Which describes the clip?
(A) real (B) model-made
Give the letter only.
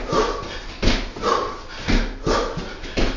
A